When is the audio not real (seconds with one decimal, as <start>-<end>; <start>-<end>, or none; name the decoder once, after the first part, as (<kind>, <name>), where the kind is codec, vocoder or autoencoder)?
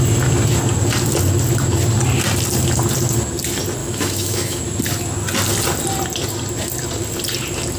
3.8-4.6 (autoencoder, DAC-VAE)